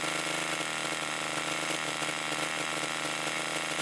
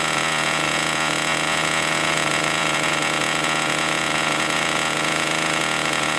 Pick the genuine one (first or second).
first